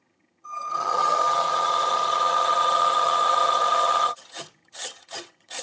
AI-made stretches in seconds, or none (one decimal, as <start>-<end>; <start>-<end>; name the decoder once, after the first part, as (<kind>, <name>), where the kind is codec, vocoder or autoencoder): 0.0-5.6 (vocoder, HiFi-GAN)